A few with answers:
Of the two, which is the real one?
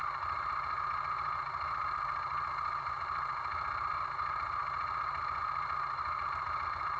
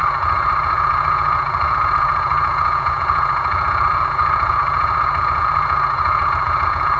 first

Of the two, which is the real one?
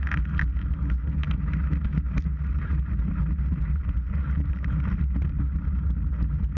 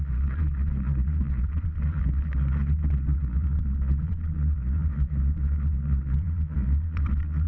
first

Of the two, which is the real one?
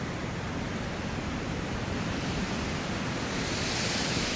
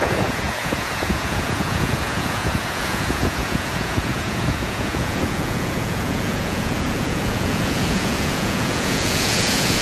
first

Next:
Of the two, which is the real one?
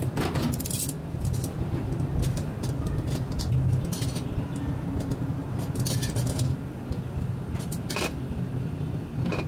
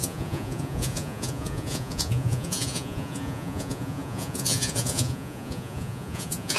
first